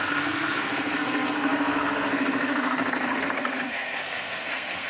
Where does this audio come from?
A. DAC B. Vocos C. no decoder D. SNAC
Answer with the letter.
D